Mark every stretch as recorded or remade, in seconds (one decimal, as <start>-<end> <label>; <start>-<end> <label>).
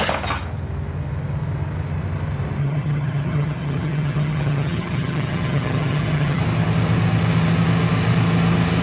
0.0-2.6 recorded; 2.6-6.4 remade; 6.4-8.8 recorded